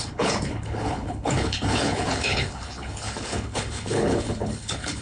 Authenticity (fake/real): fake